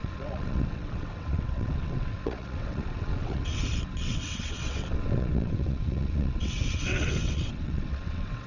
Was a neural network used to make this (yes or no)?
yes